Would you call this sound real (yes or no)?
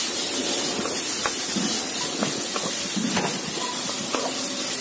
yes